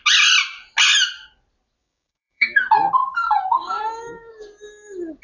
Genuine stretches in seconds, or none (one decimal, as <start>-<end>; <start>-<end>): 0.0-1.8; 2.6-3.0; 4.3-5.2